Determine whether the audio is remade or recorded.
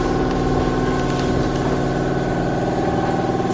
recorded